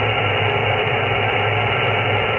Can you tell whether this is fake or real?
real